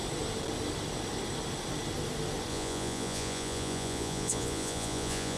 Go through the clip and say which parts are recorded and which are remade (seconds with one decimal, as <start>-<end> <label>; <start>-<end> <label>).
0.0-2.5 recorded; 2.5-5.4 remade